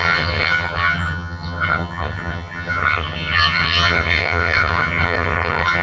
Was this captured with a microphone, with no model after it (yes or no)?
no